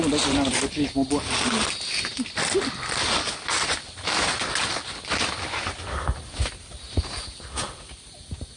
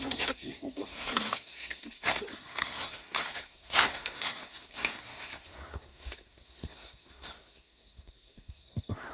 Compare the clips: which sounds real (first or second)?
first